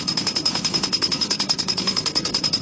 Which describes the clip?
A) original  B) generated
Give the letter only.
B